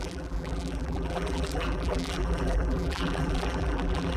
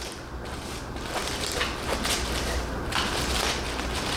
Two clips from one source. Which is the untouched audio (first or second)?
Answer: second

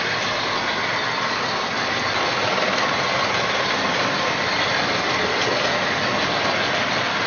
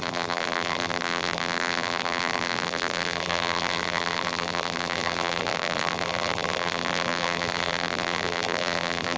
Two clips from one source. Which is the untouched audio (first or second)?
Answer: first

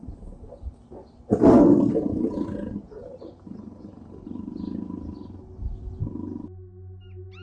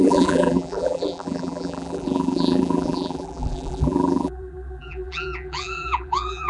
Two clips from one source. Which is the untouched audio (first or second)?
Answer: first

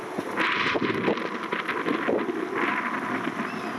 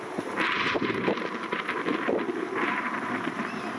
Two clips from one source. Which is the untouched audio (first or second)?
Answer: first